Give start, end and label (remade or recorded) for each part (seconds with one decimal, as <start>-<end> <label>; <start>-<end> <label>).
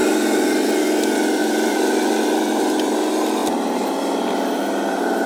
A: 0.0-1.4 recorded; 1.4-2.6 remade; 2.6-3.4 recorded; 3.4-4.0 remade; 4.0-5.3 recorded